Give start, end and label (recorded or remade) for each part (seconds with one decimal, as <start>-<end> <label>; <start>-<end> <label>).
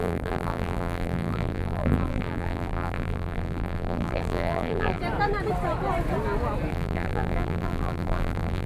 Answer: 0.0-5.0 remade; 5.0-6.7 recorded; 6.7-8.7 remade